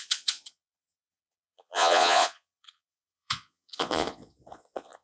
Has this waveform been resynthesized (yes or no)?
yes